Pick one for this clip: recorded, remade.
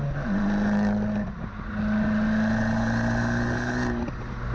recorded